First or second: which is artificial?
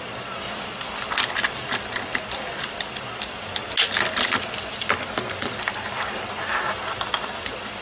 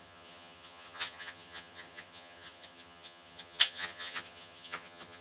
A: second